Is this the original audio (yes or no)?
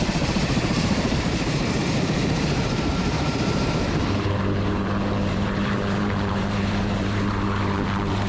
no